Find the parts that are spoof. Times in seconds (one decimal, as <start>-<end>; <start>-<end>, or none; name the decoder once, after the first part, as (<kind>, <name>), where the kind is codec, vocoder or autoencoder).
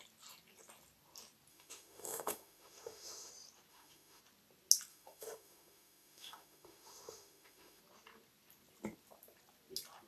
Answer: 1.5-3.3 (autoencoder, DAC-VAE); 3.7-4.2; 4.9-7.8